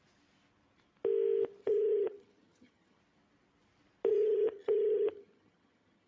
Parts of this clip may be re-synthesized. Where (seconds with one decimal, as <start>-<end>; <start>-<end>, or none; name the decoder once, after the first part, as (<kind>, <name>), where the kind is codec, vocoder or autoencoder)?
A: 1.6-3.0 (vocoder, HiFi-GAN); 4.1-6.1